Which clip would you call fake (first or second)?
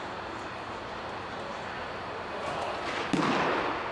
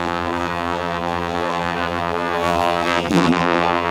second